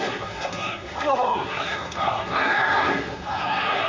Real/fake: fake